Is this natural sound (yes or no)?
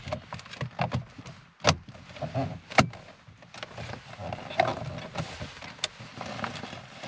yes